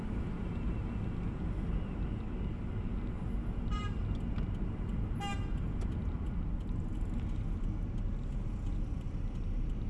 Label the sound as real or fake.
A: real